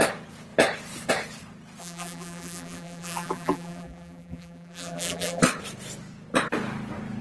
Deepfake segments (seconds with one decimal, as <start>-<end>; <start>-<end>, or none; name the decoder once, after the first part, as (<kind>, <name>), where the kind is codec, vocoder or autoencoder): 1.8-5.4 (vocoder, BigVGAN v2)